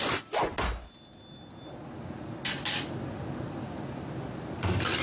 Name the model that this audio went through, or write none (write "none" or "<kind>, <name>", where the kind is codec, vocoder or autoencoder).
none